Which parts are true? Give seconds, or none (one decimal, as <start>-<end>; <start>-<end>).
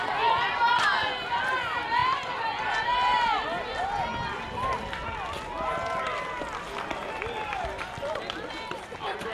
0.0-9.3